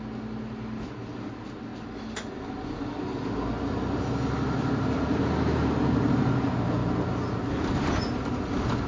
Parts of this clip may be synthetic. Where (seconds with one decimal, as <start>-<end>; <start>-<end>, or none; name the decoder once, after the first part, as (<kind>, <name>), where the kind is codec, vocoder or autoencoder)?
none